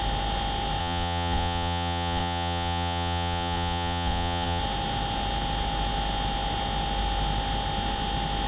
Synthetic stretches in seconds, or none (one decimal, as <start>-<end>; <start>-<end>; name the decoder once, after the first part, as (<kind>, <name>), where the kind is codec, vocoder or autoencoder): 0.8-4.6 (vocoder, Vocos)